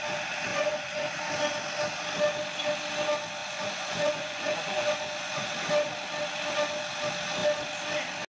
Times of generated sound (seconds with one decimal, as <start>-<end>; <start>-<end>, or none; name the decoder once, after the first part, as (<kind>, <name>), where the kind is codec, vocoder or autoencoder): 0.5-1.1 (vocoder, Vocos); 3.4-5.5